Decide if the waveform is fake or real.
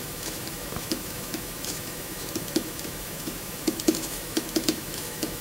fake